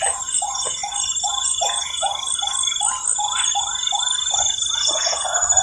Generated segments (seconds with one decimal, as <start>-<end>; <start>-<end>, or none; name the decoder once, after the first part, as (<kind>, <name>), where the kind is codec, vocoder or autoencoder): 0.0-0.8 (vocoder, Vocos); 1.3-2.1; 4.8-5.6